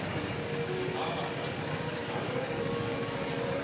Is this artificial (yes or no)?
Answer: yes